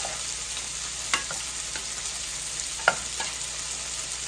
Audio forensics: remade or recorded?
recorded